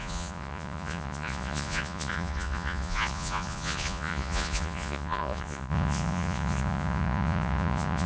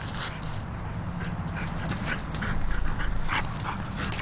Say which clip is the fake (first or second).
first